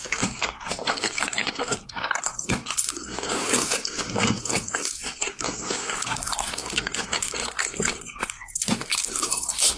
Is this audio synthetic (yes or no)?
yes